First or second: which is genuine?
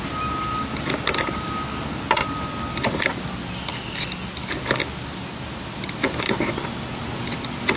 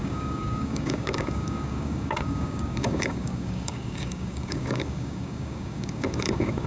first